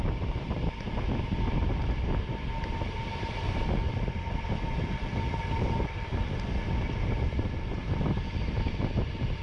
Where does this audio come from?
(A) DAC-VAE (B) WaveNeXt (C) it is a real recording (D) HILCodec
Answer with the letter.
C